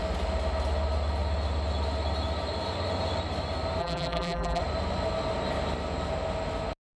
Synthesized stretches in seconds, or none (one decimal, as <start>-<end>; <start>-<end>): 3.8-4.6